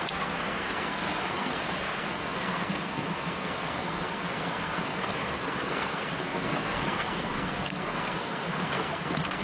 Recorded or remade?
remade